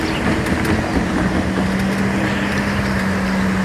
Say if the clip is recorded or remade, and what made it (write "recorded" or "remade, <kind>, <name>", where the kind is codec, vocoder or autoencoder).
recorded